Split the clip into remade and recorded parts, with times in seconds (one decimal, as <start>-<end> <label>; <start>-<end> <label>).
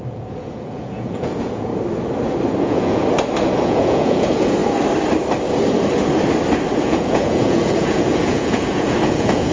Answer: 0.0-1.7 remade; 1.7-2.6 recorded; 2.6-3.0 remade; 3.0-3.6 recorded; 3.6-4.6 remade; 4.6-6.8 recorded; 6.8-9.5 remade